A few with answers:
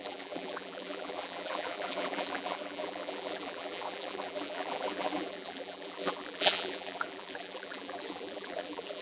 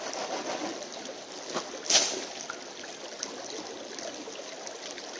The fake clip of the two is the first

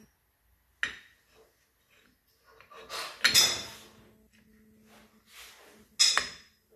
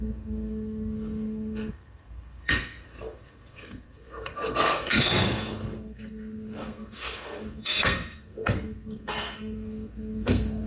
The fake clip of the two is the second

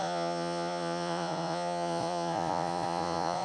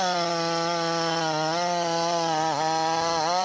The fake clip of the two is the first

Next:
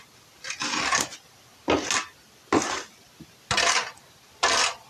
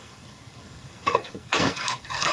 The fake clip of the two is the second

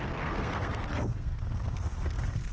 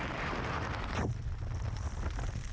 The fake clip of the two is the first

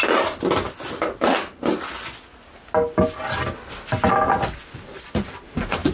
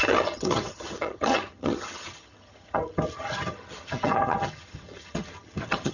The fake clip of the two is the second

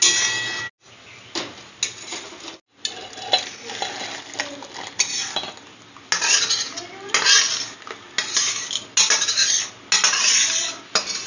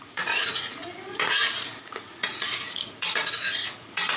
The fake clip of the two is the second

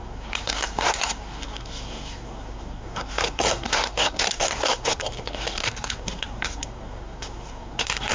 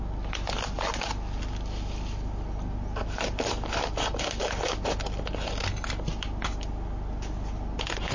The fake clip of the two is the first